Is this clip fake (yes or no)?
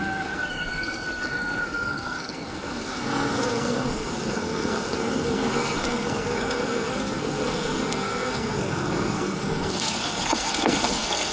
yes